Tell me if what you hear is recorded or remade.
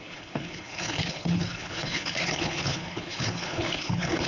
remade